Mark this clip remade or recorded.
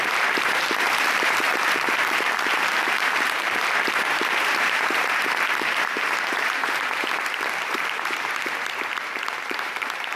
remade